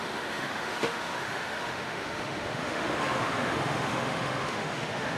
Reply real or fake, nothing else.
fake